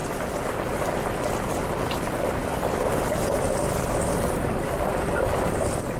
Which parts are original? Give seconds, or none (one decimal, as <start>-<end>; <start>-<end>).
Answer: 0.0-1.5